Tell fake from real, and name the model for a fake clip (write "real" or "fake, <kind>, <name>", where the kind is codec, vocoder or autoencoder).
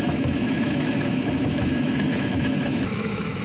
fake, autoencoder, DAC-VAE